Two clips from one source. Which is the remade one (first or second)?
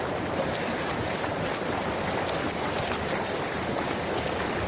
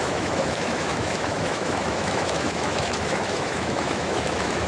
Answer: second